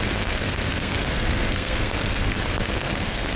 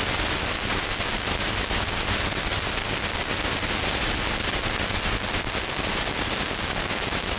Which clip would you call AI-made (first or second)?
first